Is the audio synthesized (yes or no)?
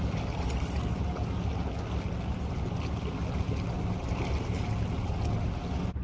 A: no